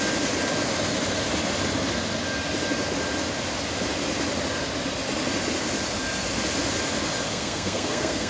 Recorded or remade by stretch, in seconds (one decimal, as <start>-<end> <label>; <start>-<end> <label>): 0.0-7.3 recorded; 7.3-8.3 remade